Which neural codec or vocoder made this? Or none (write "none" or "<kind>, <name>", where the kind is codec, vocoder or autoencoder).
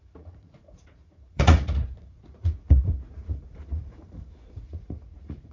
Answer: vocoder, Vocos